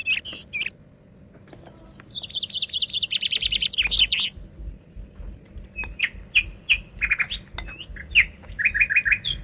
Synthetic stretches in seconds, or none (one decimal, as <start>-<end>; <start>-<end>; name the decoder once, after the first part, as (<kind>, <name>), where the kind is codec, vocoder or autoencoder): none